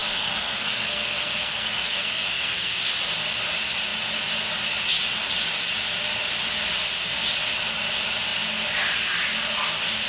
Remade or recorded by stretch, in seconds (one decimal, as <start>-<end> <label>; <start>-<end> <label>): 0.0-2.8 remade; 2.8-10.1 recorded